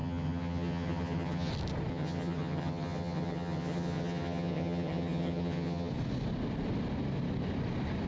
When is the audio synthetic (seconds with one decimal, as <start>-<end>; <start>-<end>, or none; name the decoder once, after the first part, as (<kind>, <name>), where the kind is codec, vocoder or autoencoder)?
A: 0.0-1.5 (vocoder, HiFi-GAN); 1.9-5.9